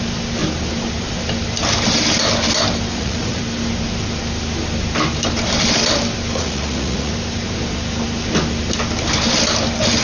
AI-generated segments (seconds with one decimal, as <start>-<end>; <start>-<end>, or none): 2.9-3.4; 6.4-7.1